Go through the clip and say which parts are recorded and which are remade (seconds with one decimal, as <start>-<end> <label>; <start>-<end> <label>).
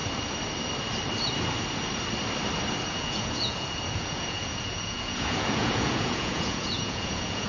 0.0-2.9 recorded; 2.9-7.5 remade